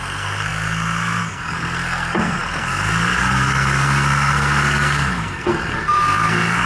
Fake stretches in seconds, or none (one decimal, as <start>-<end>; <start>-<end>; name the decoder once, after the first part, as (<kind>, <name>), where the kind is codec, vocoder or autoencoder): 0.0-6.7 (codec, SNAC)

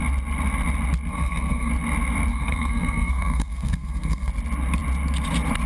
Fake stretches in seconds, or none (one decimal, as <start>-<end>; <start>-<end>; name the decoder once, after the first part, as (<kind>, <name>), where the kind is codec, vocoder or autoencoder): 1.1-1.7 (codec, SNAC); 2.3-4.3

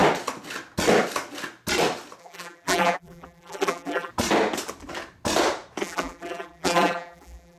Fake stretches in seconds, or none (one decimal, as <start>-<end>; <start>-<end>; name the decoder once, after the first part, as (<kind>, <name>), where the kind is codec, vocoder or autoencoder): 2.2-4.1 (vocoder, BigVGAN v2); 5.8-7.6

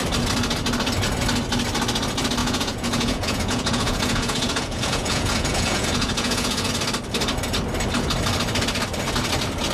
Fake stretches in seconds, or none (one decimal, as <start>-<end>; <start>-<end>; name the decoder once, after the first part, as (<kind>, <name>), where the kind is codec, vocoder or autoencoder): 2.4-6.7 (vocoder, Vocos)

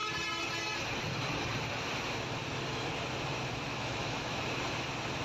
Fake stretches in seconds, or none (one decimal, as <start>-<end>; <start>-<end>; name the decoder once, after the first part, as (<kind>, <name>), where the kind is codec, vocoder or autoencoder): 3.7-4.4 (autoencoder, DAC-VAE)

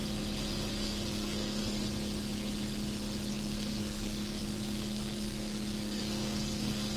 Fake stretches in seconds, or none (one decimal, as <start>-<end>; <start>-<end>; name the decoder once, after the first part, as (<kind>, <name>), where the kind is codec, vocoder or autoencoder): 0.7-1.6 (codec, SNAC); 3.3-7.0

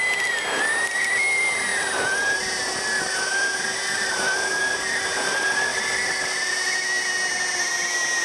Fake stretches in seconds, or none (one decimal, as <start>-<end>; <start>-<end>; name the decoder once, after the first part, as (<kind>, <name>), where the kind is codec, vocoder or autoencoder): none